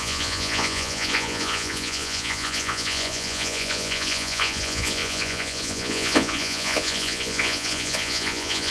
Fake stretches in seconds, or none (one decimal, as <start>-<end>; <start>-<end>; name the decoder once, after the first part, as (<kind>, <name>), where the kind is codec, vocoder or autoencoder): 0.0-8.7 (vocoder, Vocos)